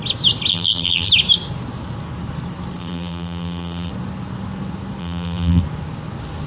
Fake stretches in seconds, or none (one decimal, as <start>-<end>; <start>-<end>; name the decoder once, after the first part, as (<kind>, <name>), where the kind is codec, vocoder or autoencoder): 0.5-1.1 (vocoder, BigVGAN v2); 2.8-3.9; 5.0-5.6